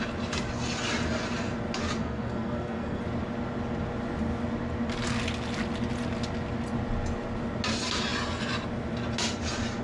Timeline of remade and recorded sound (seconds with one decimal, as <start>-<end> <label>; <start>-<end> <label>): 0.0-2.0 recorded; 2.0-3.0 remade; 3.0-9.8 recorded